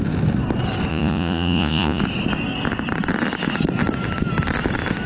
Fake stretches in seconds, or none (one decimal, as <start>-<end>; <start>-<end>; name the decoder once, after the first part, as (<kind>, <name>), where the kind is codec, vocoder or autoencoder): 0.9-2.0 (vocoder, Vocos)

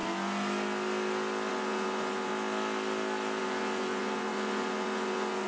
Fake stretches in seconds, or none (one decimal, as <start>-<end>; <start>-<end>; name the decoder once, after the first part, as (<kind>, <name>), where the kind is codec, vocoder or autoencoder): 1.5-2.3 (vocoder, Vocos); 3.4-5.5

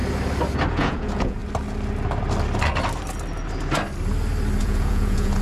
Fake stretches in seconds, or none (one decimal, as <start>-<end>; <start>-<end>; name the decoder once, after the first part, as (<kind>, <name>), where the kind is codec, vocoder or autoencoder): 0.7-1.4 (vocoder, Vocos); 4.6-5.4

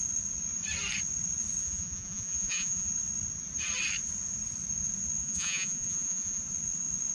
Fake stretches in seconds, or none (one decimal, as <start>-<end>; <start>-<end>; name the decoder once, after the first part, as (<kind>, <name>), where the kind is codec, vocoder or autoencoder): 1.6-2.9 (vocoder, Vocos); 5.2-6.4

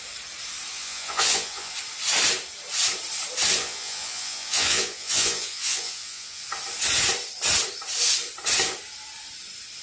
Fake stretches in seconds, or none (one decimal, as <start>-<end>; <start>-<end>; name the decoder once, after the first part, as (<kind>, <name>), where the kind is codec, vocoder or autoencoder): 0.7-1.7 (vocoder, Vocos); 3.6-6.4

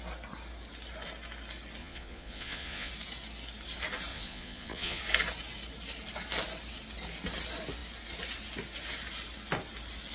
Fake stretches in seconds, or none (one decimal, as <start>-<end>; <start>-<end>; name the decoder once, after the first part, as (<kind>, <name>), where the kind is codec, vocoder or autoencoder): 1.8-2.9 (vocoder, Vocos); 4.1-5.0

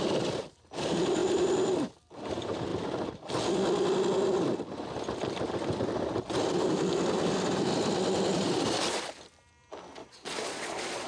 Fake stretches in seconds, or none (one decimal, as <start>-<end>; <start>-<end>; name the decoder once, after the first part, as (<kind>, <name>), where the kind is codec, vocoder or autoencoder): 10.0-11.1 (vocoder, Vocos)

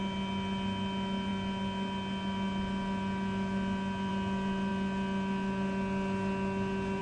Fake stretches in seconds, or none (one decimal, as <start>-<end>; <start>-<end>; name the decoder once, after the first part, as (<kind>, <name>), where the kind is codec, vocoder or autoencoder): none